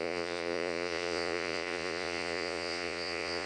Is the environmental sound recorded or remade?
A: remade